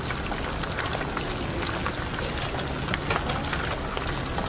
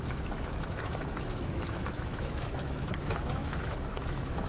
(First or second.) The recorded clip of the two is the first